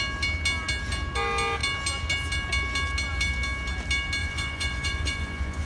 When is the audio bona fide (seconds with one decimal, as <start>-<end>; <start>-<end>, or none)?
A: 0.0-4.2